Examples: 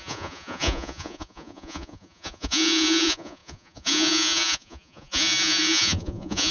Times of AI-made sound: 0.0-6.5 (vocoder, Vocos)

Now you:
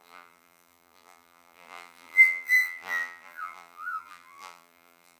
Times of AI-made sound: 0.0-5.2 (vocoder, BigVGAN v2)

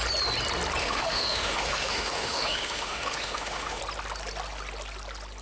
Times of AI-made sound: 0.8-3.8 (autoencoder, DAC-VAE)

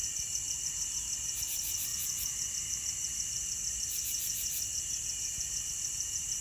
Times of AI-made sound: none